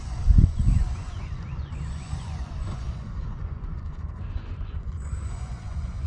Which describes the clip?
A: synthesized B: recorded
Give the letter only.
A